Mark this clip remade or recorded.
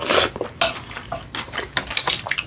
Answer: recorded